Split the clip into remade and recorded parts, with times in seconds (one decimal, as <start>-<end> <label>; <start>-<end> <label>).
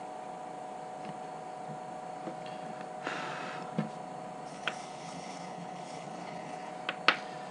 0.0-4.5 recorded; 4.5-6.7 remade; 6.7-7.5 recorded